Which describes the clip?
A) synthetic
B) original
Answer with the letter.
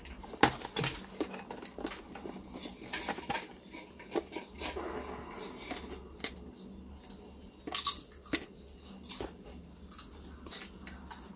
B